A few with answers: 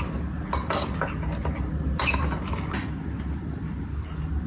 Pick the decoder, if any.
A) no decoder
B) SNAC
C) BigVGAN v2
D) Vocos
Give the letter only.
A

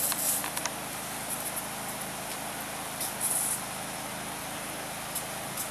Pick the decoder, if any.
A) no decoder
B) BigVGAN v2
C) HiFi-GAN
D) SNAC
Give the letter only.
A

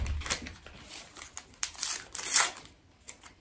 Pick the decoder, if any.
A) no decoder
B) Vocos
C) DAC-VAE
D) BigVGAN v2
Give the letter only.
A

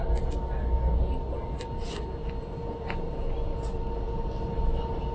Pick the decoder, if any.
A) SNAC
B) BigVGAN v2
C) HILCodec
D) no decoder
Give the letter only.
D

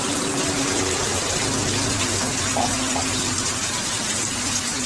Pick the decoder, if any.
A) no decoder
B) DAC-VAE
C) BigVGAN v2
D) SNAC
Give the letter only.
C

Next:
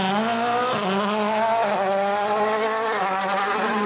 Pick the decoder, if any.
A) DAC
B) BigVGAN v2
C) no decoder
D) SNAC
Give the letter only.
C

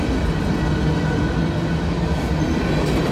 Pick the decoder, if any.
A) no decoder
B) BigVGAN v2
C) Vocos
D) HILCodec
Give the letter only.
A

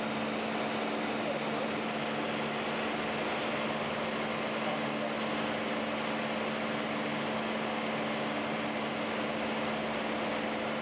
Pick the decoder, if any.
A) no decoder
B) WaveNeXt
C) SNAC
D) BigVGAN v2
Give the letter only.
A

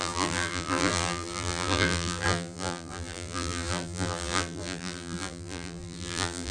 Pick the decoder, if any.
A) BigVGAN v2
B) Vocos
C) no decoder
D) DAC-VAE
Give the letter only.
A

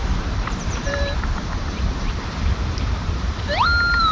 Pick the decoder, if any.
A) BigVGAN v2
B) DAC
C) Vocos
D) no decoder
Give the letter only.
A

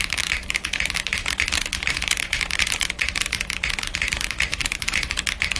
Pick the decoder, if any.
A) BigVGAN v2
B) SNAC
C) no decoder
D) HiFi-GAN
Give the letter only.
A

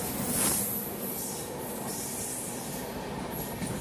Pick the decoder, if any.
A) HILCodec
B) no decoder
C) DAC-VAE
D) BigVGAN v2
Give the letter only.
B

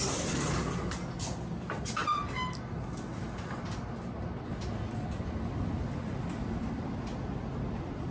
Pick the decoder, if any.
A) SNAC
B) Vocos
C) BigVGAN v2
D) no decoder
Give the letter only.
D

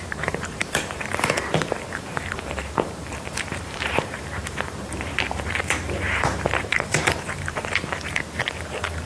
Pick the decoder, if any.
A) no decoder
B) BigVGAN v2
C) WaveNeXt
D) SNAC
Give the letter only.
B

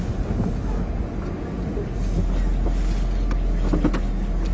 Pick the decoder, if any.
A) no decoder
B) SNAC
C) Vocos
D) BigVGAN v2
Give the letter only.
A